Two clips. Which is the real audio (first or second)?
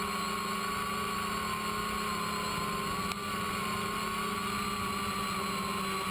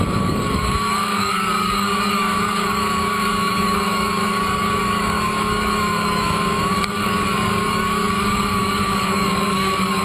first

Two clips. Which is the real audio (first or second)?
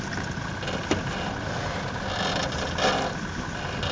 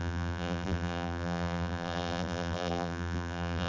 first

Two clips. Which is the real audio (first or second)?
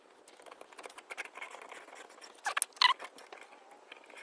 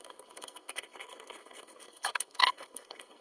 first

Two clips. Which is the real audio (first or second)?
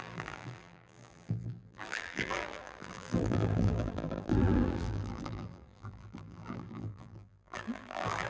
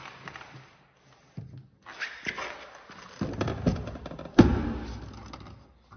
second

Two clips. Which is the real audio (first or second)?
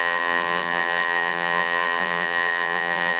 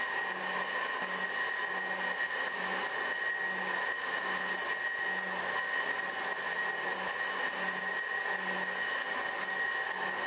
second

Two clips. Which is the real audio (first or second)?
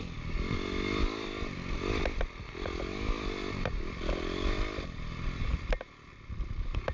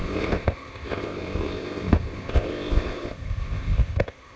first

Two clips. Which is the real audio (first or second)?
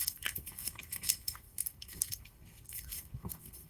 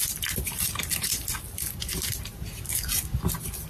second